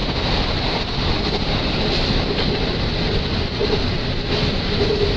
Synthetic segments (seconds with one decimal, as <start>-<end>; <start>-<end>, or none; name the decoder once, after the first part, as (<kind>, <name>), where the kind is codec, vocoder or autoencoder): none